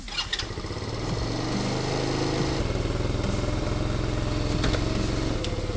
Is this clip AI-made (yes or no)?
no